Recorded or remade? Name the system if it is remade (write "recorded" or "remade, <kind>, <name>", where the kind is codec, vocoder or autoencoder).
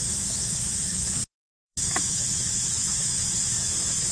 remade, autoencoder, DAC-VAE